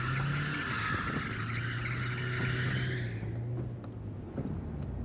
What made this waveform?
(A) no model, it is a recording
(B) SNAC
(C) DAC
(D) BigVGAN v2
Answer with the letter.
A